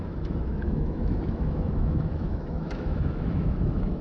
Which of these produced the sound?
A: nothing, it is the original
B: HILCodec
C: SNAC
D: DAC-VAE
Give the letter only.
D